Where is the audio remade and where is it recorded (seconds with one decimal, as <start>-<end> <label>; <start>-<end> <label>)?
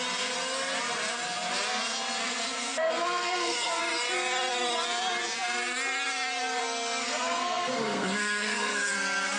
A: 0.0-2.2 recorded; 2.2-3.8 remade; 3.8-6.6 recorded; 6.6-9.4 remade